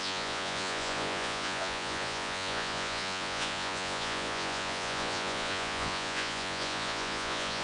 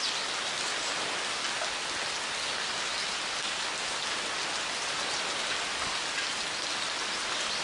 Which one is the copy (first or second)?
first